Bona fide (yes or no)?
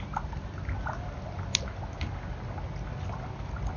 yes